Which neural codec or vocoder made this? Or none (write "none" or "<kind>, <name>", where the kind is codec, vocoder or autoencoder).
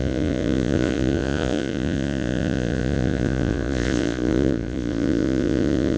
vocoder, Vocos